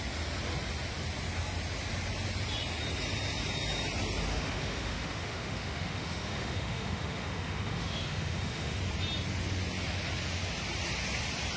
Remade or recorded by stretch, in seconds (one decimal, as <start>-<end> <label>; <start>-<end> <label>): 0.0-4.3 recorded; 4.3-8.8 remade; 8.8-11.6 recorded